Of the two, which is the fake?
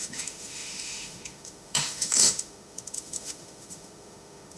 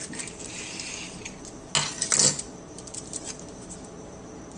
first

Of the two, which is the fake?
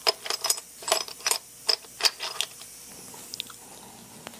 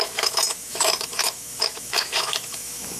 second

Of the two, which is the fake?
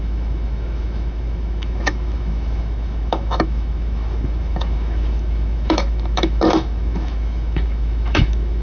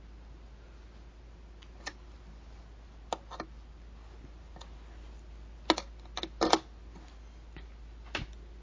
first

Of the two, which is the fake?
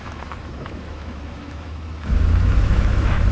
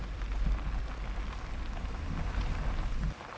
first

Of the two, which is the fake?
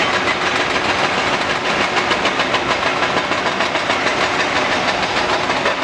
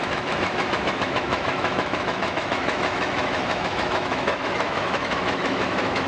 second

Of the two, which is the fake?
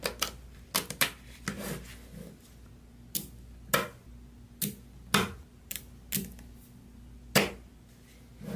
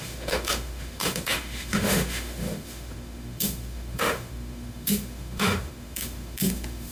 second